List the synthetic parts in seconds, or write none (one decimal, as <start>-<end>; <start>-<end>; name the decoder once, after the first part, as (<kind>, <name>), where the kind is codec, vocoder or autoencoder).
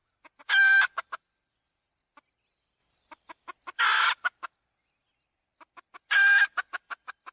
0.0-1.9 (vocoder, BigVGAN v2); 2.8-3.8; 5.0-7.3